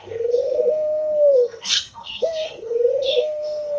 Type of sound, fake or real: fake